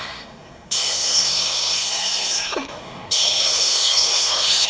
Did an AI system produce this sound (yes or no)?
yes